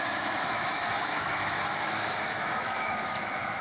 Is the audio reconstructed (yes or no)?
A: yes